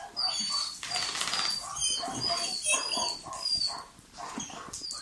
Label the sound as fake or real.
real